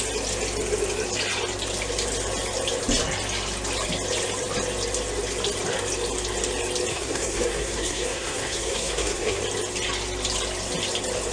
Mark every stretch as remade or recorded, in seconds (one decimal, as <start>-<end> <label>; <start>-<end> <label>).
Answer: 0.0-6.9 recorded; 6.9-9.4 remade; 9.4-11.3 recorded